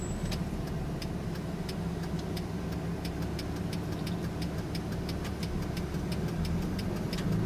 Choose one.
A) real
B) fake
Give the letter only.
A